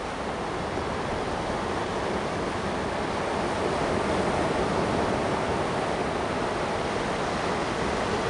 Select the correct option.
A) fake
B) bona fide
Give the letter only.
B